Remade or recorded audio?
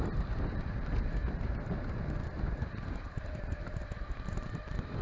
recorded